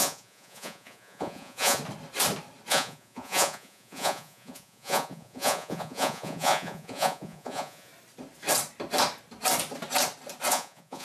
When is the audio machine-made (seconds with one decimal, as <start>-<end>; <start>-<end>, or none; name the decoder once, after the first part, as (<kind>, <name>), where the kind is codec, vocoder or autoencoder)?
0.0-1.8 (vocoder, Vocos); 2.7-7.9; 10.5-11.0